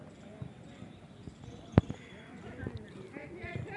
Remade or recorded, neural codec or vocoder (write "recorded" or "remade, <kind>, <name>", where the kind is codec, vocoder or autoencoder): recorded